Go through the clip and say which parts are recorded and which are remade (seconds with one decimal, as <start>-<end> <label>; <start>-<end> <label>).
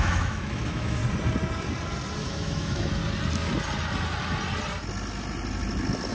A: 0.0-1.0 remade; 1.0-2.2 recorded; 2.2-3.0 remade; 3.0-6.1 recorded